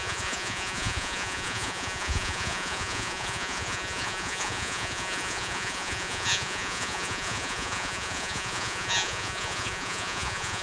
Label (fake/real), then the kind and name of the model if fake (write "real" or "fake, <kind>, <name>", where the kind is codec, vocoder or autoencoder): fake, vocoder, Vocos